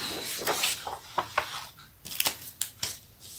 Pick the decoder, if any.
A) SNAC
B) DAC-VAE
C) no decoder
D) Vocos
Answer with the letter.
C